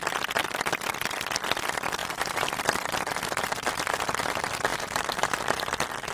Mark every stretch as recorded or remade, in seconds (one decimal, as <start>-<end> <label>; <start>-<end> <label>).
0.0-2.0 recorded; 2.0-2.6 remade; 2.6-4.7 recorded; 4.7-5.4 remade; 5.4-6.1 recorded